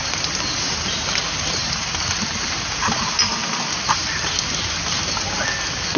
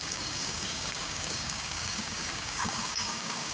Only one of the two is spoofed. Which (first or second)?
second